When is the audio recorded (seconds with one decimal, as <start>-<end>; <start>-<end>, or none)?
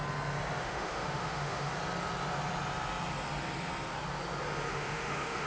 0.0-0.6; 1.7-4.7